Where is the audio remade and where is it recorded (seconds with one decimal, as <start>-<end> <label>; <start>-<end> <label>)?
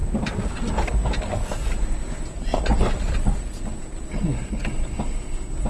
0.0-0.6 remade; 0.6-2.7 recorded; 2.7-4.2 remade; 4.2-5.7 recorded